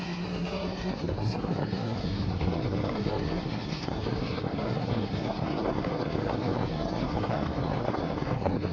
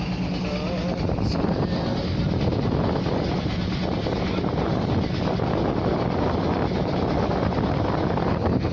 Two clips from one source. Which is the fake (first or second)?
first